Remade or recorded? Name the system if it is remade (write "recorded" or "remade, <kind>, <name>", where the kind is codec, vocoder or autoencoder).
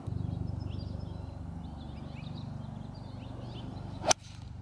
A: recorded